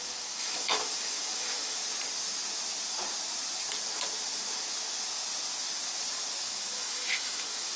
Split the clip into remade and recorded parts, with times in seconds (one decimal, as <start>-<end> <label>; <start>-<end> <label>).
0.0-1.8 remade; 1.8-6.4 recorded; 6.4-7.8 remade